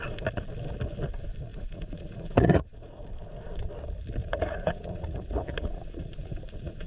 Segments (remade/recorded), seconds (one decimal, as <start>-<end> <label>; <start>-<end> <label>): 0.0-1.5 recorded; 1.5-3.0 remade; 3.0-4.2 recorded; 4.2-6.9 remade